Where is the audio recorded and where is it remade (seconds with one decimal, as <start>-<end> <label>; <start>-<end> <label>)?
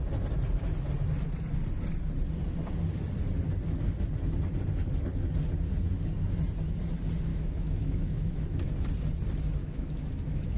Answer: 0.0-7.3 recorded; 7.3-8.7 remade; 8.7-9.6 recorded; 9.6-10.6 remade